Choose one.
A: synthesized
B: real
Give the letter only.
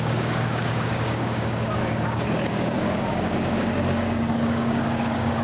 A